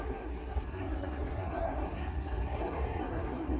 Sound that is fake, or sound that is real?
fake